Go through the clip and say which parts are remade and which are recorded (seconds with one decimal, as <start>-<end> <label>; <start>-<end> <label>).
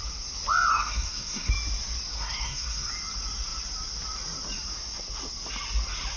0.0-0.7 recorded; 0.7-1.5 remade; 1.5-2.1 recorded; 2.1-2.9 remade; 2.9-6.2 recorded